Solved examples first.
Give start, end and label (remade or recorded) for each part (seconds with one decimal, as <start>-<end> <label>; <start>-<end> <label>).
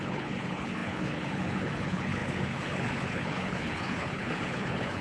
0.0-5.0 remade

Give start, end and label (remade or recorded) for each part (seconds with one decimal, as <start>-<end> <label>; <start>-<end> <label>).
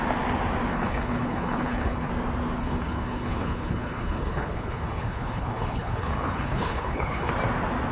0.0-0.7 recorded; 0.7-2.1 remade; 2.1-2.6 recorded; 2.6-7.3 remade; 7.3-7.9 recorded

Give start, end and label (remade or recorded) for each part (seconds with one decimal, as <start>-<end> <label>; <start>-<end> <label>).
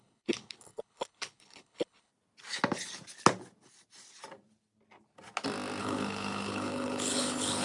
0.0-2.1 remade; 2.1-5.8 recorded; 5.8-7.6 remade